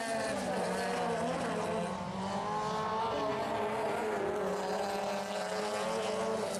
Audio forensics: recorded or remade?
recorded